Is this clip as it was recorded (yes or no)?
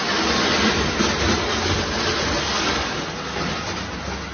yes